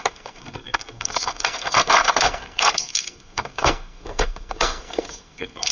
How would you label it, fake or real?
fake